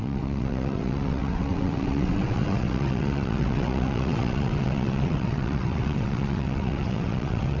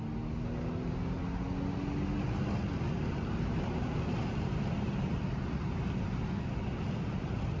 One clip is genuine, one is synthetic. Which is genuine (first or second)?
second